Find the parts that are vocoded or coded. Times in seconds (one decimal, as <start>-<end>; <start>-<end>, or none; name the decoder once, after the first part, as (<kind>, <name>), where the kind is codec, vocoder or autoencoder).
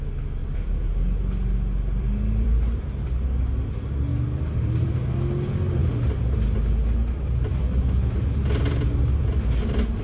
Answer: 0.4-3.0 (vocoder, BigVGAN v2); 4.1-4.9; 7.0-7.6